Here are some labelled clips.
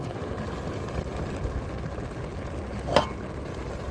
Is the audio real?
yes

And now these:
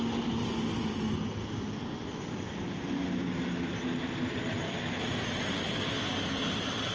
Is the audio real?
yes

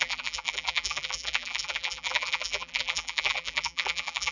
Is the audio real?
no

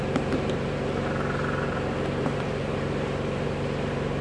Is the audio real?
no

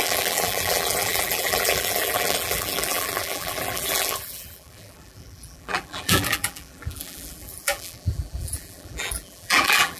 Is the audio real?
no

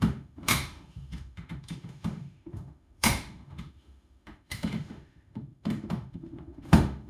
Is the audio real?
no